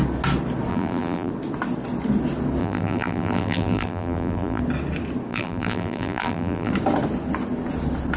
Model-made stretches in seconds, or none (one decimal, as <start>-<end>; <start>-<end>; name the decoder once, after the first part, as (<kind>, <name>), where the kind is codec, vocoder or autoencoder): 0.7-1.3 (vocoder, BigVGAN v2); 2.6-4.6; 5.3-6.7